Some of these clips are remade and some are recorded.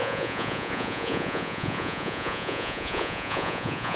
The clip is remade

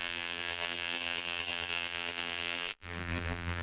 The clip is remade